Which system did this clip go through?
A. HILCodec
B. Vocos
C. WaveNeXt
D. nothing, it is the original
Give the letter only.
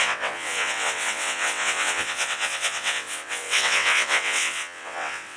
C